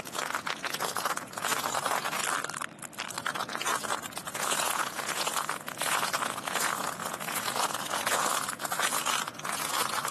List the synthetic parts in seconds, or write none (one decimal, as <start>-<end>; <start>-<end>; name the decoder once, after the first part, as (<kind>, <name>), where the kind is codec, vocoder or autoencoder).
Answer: 0.0-2.2 (vocoder, Vocos); 3.2-10.1